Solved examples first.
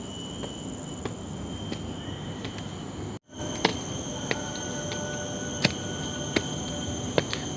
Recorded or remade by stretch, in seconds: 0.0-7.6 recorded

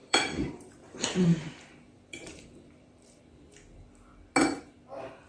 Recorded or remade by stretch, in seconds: 0.0-3.2 remade; 3.2-5.3 recorded